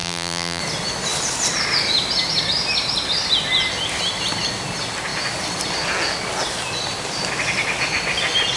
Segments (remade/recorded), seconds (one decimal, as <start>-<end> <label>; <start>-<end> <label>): 0.0-0.6 remade; 0.6-8.6 recorded